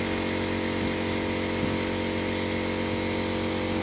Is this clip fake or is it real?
real